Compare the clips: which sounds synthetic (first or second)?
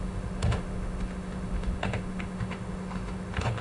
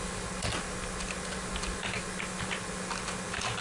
first